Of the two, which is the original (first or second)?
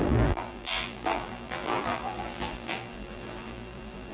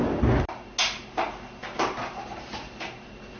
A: second